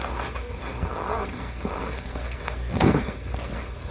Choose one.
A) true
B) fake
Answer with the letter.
B